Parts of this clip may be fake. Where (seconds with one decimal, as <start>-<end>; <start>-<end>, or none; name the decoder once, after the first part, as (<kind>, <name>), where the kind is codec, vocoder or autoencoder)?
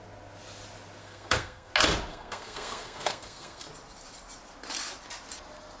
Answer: 1.0-1.7 (codec, SNAC); 2.1-3.7